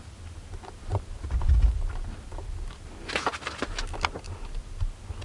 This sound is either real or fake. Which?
real